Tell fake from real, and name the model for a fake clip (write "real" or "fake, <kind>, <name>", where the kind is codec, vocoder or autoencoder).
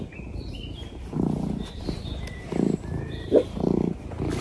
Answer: real